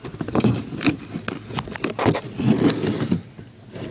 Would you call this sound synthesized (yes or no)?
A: no